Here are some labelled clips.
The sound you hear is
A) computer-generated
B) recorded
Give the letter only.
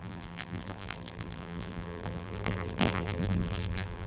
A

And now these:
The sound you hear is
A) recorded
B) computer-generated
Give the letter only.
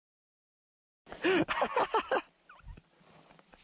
A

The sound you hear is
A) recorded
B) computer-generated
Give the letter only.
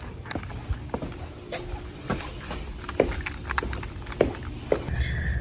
A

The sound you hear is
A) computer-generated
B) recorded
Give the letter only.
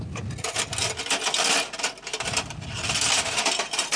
B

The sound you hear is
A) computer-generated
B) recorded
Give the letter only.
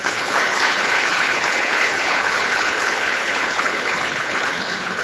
A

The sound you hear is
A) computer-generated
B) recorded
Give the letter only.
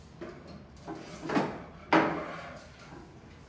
B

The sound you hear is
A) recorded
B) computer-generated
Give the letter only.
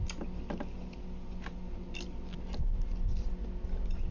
A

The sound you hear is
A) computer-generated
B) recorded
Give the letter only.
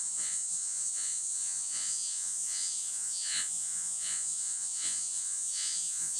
A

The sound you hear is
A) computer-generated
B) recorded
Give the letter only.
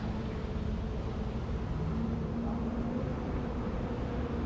A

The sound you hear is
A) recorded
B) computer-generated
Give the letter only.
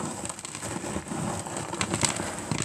A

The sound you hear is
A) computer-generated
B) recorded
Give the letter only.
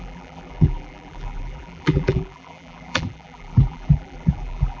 A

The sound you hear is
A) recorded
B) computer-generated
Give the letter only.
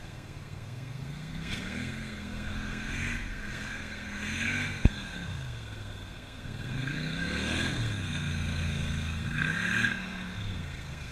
B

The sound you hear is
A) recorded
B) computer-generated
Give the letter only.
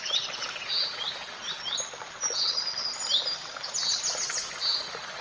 A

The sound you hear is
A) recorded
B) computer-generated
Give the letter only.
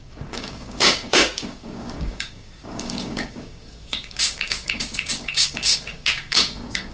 B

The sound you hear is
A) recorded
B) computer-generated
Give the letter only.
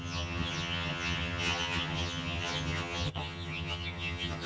B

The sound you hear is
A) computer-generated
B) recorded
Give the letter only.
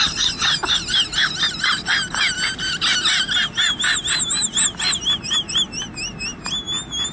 B